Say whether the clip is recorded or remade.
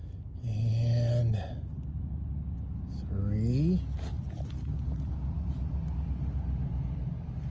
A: recorded